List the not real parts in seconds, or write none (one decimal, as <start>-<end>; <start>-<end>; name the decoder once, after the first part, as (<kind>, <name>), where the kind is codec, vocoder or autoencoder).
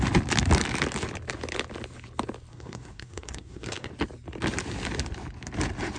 2.5-3.9 (codec, SNAC)